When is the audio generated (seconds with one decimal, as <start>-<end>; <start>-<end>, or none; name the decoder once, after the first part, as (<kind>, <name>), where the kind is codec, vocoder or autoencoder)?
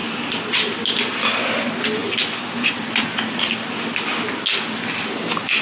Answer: none